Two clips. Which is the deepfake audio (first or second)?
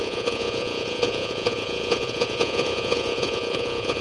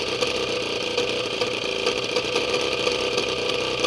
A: first